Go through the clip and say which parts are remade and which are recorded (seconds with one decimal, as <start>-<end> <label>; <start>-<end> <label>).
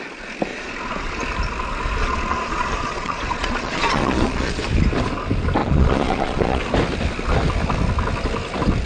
0.0-0.5 recorded; 0.5-1.2 remade; 1.2-2.0 recorded; 2.0-4.6 remade; 4.6-5.6 recorded; 5.6-6.6 remade; 6.6-8.9 recorded